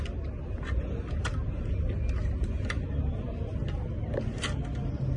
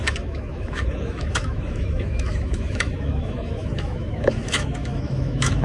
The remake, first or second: second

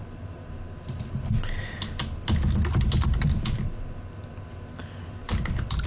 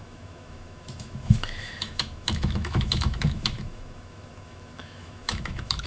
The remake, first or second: second